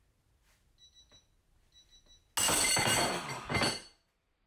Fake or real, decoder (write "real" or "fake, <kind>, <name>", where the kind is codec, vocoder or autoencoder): real